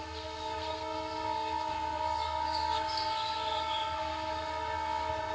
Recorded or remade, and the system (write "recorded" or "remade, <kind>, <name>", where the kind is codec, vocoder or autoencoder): remade, codec, SNAC